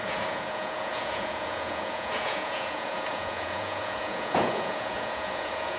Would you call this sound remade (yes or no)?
yes